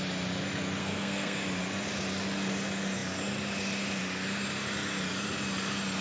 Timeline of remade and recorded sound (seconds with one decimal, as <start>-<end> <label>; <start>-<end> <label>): 0.0-0.8 recorded; 0.8-1.4 remade; 1.4-6.0 recorded